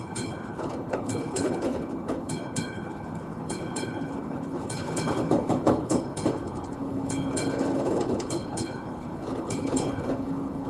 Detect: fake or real fake